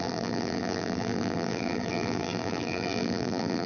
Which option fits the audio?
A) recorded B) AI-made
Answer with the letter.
B